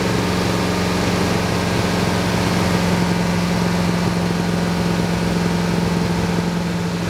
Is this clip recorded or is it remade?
recorded